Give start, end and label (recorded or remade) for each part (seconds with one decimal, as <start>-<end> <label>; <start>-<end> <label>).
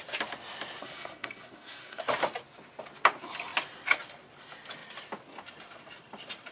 0.0-0.8 recorded; 0.8-2.0 remade; 2.0-6.5 recorded